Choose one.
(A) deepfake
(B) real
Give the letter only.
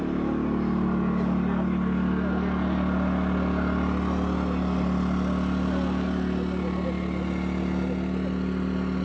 B